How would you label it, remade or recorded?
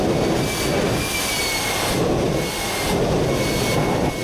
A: recorded